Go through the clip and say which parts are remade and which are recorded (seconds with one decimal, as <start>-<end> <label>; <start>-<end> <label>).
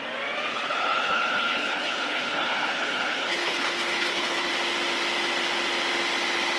0.0-0.5 recorded; 0.5-4.5 remade; 4.5-6.6 recorded